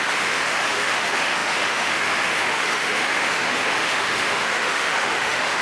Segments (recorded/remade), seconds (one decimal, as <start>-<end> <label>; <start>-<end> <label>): 0.0-5.6 remade